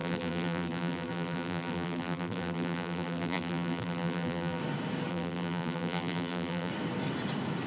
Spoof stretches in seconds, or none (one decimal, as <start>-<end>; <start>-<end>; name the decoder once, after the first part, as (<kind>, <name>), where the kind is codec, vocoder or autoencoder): 0.0-4.6 (vocoder, BigVGAN v2); 5.1-6.7